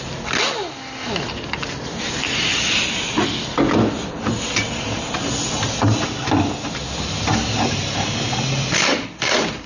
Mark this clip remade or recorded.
recorded